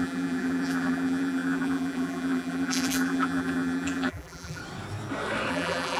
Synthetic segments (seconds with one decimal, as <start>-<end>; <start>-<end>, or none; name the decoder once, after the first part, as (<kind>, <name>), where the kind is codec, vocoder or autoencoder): 0.0-4.6 (vocoder, BigVGAN v2); 5.5-6.0